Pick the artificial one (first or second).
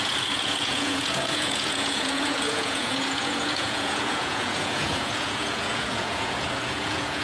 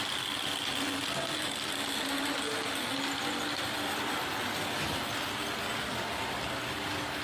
first